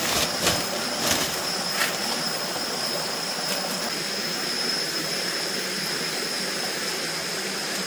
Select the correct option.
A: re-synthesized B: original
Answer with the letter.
A